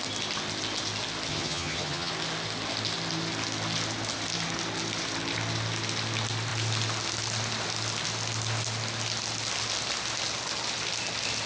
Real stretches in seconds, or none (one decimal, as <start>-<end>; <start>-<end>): 0.0-1.3; 2.1-11.5